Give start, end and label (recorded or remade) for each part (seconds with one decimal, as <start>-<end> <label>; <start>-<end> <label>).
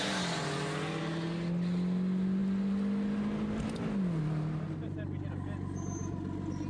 0.0-6.7 recorded